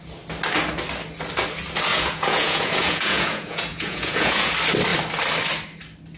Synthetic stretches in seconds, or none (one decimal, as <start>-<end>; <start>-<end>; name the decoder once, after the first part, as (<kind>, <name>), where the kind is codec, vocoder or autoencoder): 1.9-4.5 (vocoder, Vocos)